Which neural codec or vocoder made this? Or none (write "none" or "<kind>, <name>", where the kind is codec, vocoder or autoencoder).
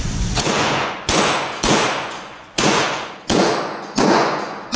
vocoder, Vocos